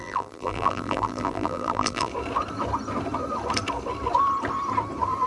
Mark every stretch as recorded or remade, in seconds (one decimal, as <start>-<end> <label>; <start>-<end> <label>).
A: 0.0-2.1 remade; 2.1-5.3 recorded